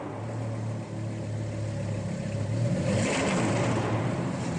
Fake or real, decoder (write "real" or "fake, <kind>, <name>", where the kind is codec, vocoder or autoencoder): real